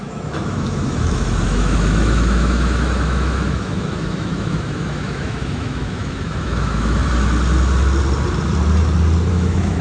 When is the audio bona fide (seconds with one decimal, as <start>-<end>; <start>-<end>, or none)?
7.0-9.3